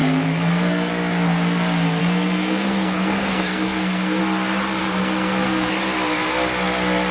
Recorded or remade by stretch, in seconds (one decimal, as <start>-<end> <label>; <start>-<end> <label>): 0.0-0.9 remade; 0.9-2.0 recorded; 2.0-4.2 remade; 4.2-4.8 recorded; 4.8-5.7 remade; 5.7-7.1 recorded